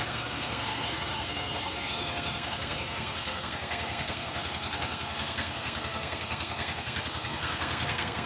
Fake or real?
fake